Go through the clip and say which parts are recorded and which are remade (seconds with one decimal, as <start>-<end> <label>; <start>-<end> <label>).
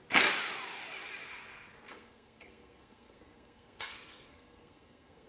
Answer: 0.0-1.9 recorded; 1.9-5.3 remade